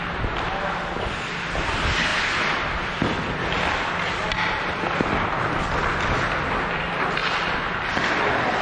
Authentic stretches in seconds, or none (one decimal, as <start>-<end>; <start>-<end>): 0.0-8.6